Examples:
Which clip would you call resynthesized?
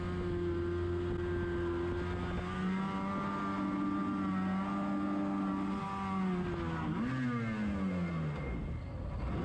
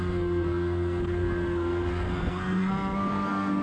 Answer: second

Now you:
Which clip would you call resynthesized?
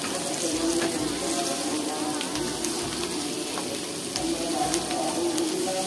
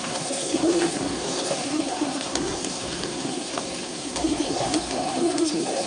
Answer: second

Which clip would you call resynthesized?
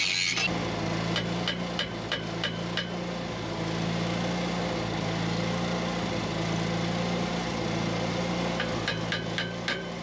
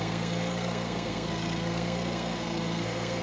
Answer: second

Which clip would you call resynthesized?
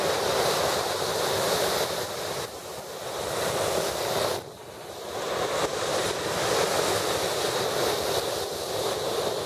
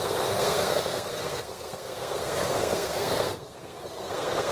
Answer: second